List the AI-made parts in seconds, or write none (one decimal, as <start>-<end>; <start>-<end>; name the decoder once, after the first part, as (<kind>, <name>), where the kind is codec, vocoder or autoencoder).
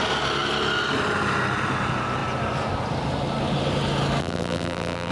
4.2-5.1 (vocoder, BigVGAN v2)